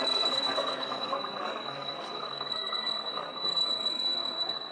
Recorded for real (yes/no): no